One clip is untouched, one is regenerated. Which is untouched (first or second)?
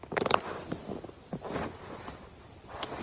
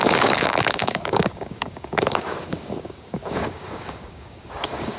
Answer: first